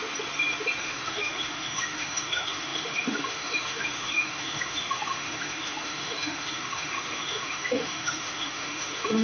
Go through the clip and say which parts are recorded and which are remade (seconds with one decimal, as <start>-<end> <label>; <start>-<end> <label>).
0.0-0.8 recorded; 0.8-9.2 remade